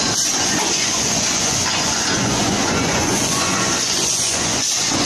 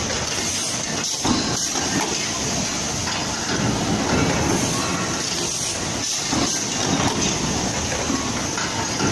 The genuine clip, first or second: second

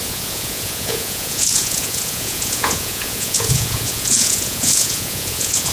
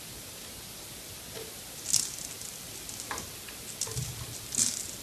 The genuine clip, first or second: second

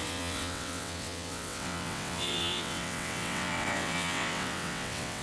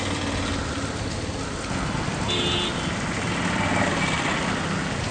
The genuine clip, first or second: second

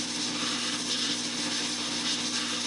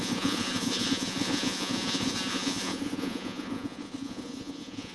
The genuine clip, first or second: first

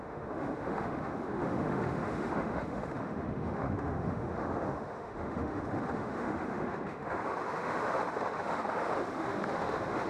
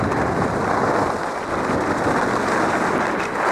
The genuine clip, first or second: second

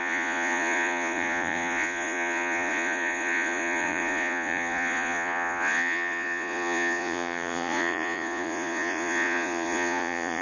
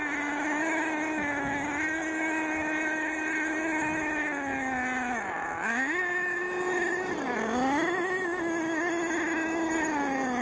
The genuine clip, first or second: second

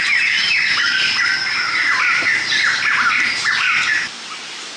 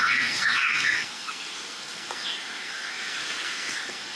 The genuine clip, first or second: first